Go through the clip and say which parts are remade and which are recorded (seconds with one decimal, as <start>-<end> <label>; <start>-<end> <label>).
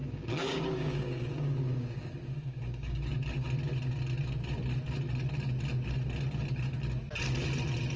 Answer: 0.0-3.1 remade; 3.1-8.0 recorded